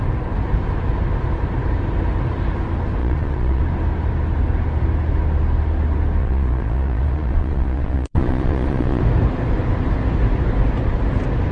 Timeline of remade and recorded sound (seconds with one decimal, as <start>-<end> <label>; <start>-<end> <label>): 0.0-3.0 recorded; 3.0-3.6 remade; 3.6-6.2 recorded; 6.2-9.0 remade; 9.0-11.5 recorded